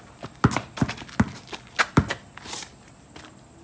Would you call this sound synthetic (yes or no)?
no